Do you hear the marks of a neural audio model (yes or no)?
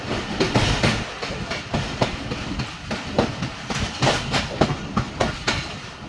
yes